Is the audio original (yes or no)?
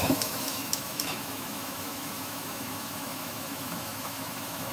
no